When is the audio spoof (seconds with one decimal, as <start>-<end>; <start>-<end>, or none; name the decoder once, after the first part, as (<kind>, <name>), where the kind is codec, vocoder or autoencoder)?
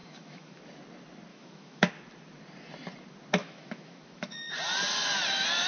0.0-0.6 (autoencoder, DAC-VAE); 1.3-1.9; 3.4-4.5